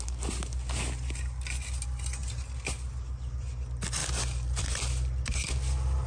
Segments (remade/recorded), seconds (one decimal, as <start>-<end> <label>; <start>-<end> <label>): 0.0-6.1 recorded